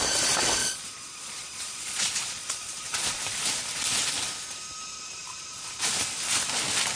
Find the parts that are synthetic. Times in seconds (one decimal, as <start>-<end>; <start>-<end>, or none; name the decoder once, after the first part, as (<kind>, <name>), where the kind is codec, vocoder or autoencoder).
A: 0.6-3.2 (vocoder, Vocos)